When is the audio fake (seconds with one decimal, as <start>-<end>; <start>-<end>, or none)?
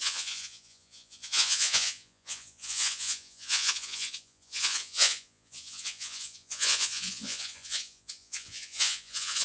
0.0-9.4